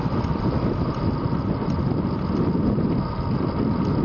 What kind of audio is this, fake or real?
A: real